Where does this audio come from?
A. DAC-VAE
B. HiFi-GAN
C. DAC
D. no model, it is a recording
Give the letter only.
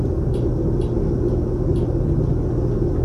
D